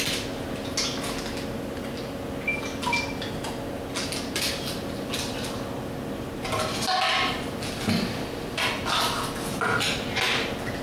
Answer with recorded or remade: recorded